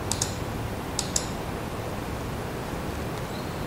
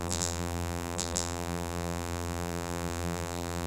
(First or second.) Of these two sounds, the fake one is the second